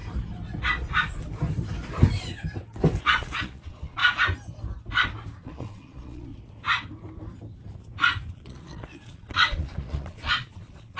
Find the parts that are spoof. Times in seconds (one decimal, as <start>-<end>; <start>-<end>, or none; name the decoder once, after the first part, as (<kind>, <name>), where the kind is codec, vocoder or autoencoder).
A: 3.0-4.0 (vocoder, Vocos); 5.4-6.3; 8.3-11.0